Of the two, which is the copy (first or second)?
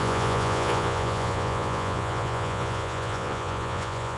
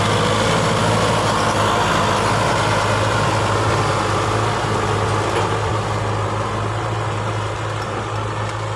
first